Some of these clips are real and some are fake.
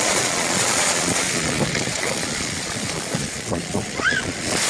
fake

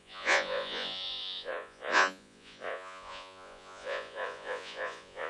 fake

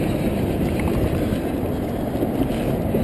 real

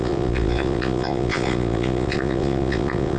fake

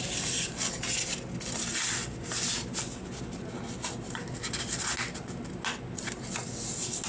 real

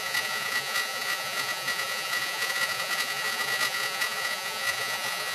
fake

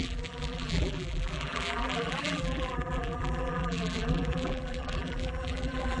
fake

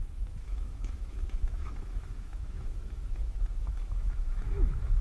fake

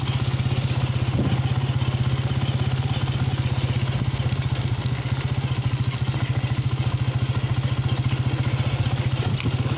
real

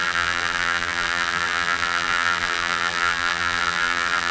fake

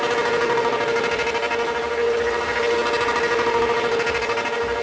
real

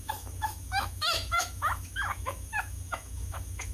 fake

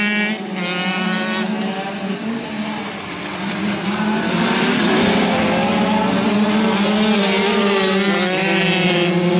real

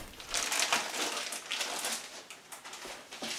real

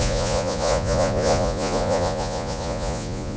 fake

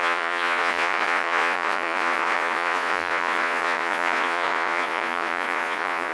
fake